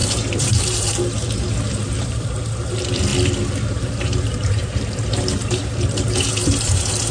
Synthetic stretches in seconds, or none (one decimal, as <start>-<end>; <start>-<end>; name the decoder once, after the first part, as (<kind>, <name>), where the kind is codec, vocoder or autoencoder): 0.0-3.1 (vocoder, BigVGAN v2); 3.7-7.1

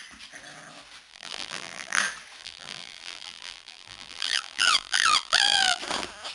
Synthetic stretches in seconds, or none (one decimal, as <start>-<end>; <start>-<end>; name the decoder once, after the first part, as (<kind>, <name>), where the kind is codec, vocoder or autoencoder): 1.1-2.0 (vocoder, BigVGAN v2); 2.4-5.8

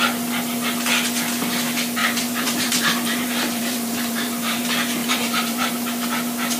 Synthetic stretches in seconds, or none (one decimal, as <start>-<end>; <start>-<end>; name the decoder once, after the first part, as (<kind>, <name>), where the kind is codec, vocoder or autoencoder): 2.0-4.6 (vocoder, BigVGAN v2); 5.0-5.7

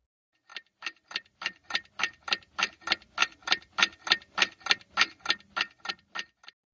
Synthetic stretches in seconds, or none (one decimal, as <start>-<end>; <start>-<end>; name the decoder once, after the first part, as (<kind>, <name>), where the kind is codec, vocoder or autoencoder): 0.5-1.9 (vocoder, BigVGAN v2)

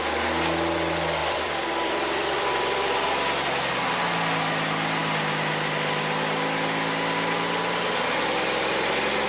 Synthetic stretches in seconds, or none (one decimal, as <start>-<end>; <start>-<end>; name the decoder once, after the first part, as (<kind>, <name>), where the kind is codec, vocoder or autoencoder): 1.2-3.1 (vocoder, BigVGAN v2)

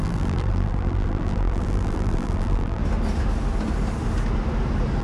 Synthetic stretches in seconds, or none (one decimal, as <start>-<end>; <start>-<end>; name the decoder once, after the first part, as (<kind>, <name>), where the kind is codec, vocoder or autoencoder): 0.0-2.8 (vocoder, BigVGAN v2)